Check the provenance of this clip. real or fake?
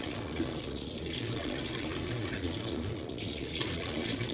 fake